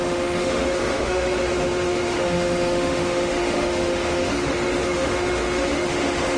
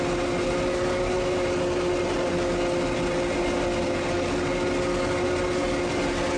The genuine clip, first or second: second